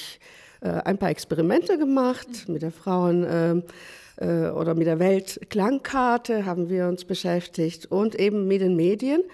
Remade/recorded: recorded